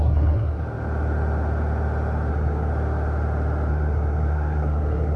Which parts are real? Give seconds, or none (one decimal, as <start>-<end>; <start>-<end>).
0.6-2.3; 2.7-3.7